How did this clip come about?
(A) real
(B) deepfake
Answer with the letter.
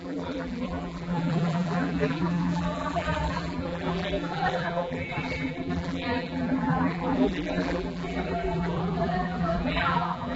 B